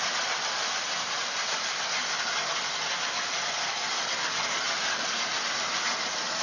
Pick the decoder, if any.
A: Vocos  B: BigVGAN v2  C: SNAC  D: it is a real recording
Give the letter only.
B